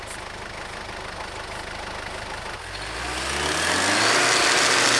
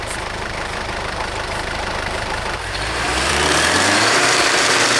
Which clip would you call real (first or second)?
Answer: first